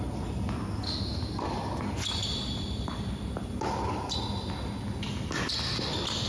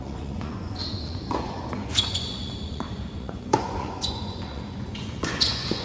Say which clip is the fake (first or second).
second